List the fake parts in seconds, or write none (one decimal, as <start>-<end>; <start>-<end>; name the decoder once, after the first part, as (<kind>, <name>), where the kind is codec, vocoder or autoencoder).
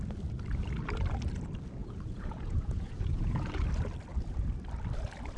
1.8-3.5 (vocoder, Vocos)